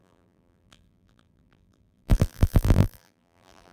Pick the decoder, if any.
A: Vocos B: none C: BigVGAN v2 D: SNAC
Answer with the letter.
C